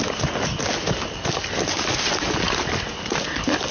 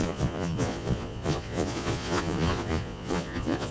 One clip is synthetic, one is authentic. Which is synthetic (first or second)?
second